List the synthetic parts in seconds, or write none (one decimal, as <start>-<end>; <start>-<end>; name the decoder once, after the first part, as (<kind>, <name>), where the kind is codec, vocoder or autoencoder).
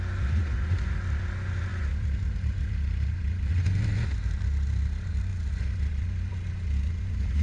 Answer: none